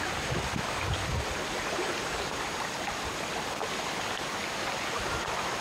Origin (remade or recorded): remade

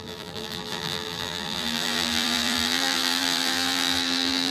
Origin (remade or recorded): remade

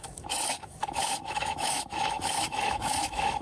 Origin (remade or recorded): remade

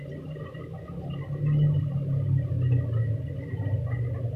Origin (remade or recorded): recorded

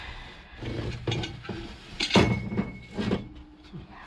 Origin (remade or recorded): recorded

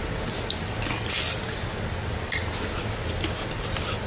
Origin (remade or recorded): recorded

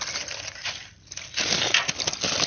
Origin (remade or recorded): recorded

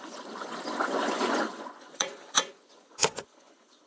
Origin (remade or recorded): remade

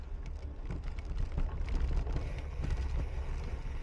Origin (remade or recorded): recorded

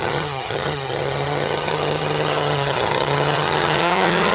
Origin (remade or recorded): remade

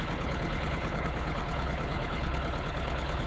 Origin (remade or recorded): remade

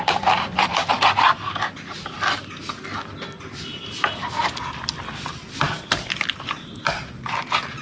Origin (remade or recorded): recorded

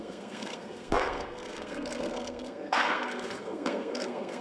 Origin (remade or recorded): remade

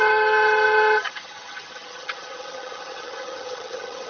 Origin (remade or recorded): remade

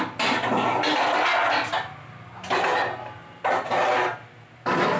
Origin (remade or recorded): recorded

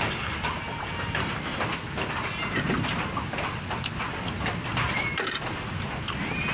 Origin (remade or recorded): recorded